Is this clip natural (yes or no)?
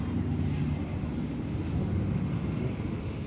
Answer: yes